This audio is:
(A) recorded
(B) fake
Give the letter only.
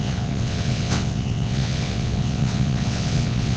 B